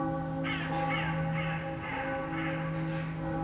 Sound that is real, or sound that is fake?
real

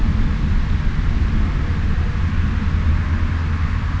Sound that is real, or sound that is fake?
real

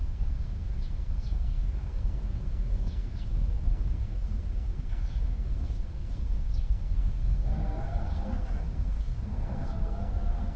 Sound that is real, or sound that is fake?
fake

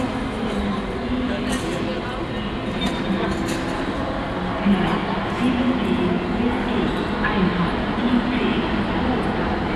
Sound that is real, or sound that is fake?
real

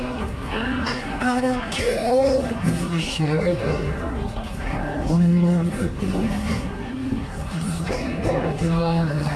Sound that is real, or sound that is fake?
fake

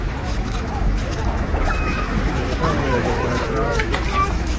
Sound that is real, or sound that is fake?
fake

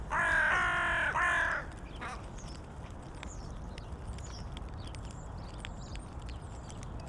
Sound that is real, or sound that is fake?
real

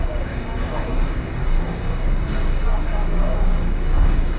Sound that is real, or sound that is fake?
fake